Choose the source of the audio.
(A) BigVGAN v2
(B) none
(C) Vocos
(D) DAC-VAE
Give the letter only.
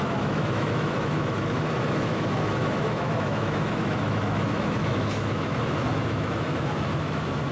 D